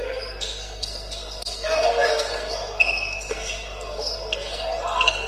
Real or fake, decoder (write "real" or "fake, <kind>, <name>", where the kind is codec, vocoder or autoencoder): fake, codec, SNAC